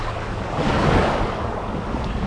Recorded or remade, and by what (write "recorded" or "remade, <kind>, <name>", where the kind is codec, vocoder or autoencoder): remade, codec, DAC